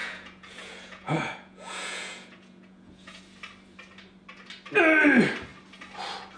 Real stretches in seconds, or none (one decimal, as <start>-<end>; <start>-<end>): 3.2-6.4